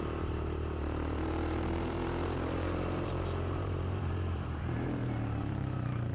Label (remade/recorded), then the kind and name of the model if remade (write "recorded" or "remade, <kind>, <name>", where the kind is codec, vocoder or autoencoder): remade, vocoder, BigVGAN v2